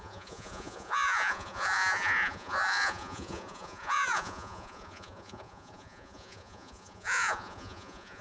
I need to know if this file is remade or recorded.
remade